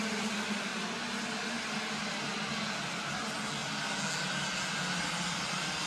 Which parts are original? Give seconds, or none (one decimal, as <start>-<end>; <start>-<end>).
0.0-5.9

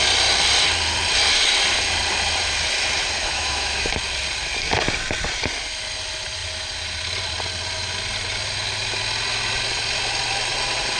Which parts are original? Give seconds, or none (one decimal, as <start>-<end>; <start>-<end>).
0.0-3.2; 3.9-11.0

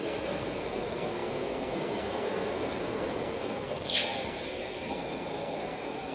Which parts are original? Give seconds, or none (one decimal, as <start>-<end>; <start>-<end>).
none

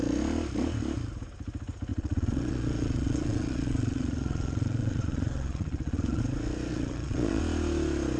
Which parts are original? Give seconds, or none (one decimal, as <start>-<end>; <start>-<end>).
0.0-1.9; 6.2-6.7; 7.4-8.2

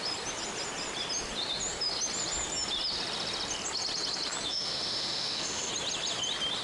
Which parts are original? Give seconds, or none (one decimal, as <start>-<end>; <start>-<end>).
0.0-4.5; 5.7-6.6